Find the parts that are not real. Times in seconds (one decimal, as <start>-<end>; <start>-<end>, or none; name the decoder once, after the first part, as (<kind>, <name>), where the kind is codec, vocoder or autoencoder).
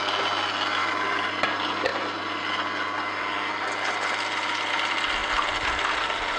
none